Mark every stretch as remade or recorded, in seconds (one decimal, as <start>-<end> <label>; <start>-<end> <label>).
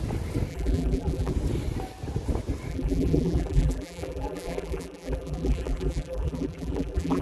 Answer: 0.0-0.5 recorded; 0.5-1.3 remade; 1.3-2.7 recorded; 2.7-7.2 remade